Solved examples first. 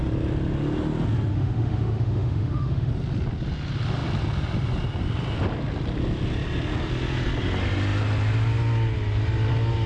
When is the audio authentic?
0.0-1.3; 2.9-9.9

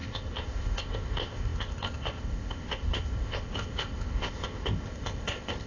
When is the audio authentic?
none

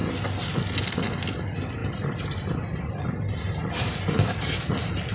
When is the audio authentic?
0.0-1.8; 4.5-5.1

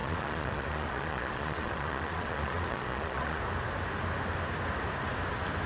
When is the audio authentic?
3.4-5.7

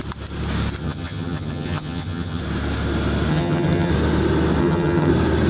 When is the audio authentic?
0.0-0.8; 2.4-3.3; 3.9-4.6; 5.1-5.5

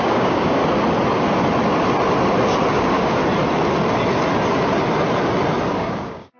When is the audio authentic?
0.6-2.7; 3.2-5.7